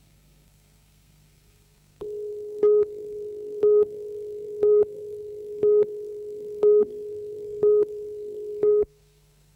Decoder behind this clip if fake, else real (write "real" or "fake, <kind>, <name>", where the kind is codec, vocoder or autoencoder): fake, codec, SNAC